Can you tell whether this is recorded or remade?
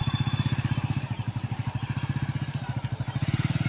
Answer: recorded